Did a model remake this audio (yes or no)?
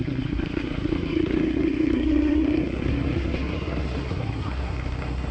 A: yes